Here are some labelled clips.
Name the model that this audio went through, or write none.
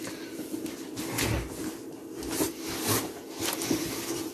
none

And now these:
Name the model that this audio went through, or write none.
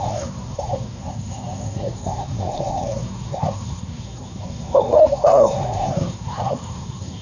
codec, SNAC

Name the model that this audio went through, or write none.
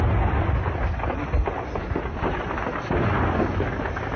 none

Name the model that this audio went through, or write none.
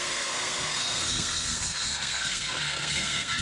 codec, SNAC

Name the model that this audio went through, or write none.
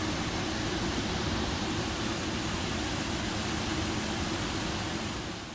none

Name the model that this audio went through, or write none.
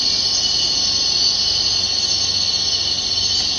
none